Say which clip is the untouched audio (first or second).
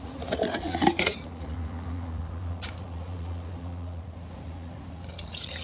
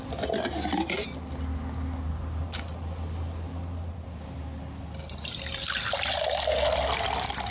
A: second